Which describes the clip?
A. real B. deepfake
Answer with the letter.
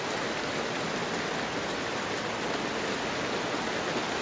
A